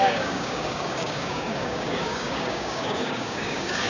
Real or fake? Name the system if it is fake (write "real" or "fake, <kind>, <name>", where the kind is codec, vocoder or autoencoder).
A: fake, codec, DAC